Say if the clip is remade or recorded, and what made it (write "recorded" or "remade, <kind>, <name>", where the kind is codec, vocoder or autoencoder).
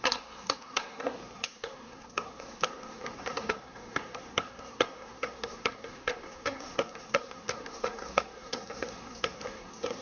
remade, codec, SNAC